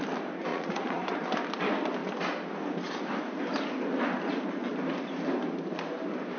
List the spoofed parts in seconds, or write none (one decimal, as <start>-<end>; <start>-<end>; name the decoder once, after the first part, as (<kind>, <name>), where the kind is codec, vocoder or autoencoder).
0.5-1.0 (vocoder, Vocos)

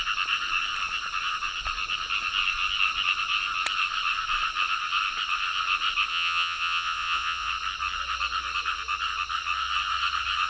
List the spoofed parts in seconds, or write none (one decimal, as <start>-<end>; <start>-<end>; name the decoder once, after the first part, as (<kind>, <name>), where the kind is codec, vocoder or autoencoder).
6.1-7.5 (vocoder, Vocos)

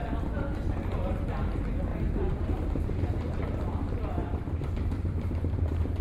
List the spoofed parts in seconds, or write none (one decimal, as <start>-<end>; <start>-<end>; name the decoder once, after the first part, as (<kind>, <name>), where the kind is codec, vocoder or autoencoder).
1.9-3.1 (vocoder, BigVGAN v2); 4.2-6.0

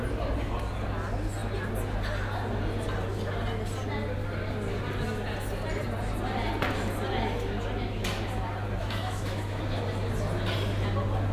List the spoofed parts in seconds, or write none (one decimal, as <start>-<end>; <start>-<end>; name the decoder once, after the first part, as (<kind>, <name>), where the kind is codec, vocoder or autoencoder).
8.8-9.6 (autoencoder, DAC-VAE)

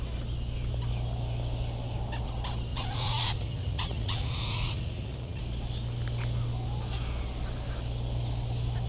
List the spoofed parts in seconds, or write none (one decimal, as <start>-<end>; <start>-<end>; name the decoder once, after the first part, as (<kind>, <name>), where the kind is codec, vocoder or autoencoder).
2.7-5.4 (vocoder, Vocos)

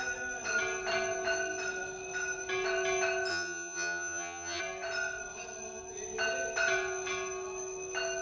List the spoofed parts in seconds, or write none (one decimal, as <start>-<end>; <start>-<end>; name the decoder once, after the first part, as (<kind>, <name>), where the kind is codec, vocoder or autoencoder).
3.3-4.6 (vocoder, HiFi-GAN)